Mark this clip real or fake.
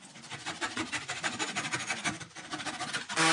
fake